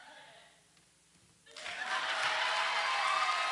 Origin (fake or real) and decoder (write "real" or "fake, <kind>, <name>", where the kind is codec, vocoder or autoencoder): real